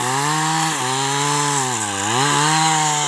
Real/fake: real